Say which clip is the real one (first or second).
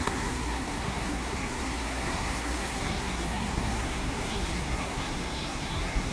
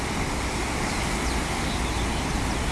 second